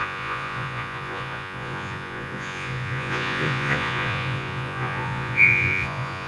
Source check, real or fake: fake